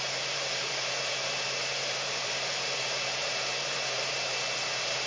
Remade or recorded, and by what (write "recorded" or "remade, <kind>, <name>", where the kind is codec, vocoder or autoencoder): remade, vocoder, BigVGAN v2